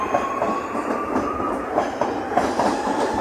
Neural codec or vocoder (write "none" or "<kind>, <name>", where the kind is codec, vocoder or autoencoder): vocoder, BigVGAN v2